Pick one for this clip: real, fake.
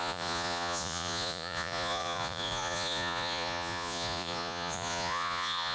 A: fake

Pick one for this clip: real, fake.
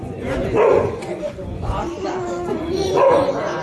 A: fake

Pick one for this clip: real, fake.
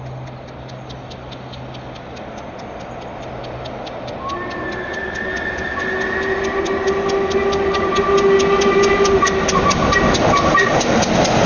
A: real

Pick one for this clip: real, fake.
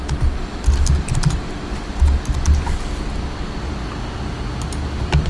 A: real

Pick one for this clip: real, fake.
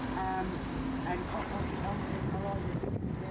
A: real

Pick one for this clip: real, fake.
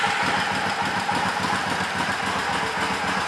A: real